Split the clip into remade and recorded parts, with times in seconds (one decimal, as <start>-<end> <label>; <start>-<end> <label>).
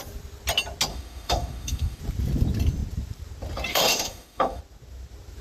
0.0-0.9 recorded; 0.9-2.0 remade; 2.0-3.7 recorded; 3.7-4.6 remade; 4.6-5.4 recorded